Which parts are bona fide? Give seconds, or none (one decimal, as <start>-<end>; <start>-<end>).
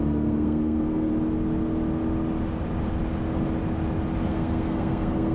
1.1-4.3